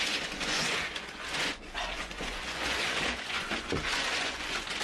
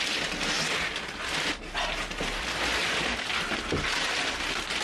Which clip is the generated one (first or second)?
first